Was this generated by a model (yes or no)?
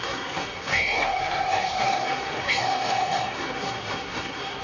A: yes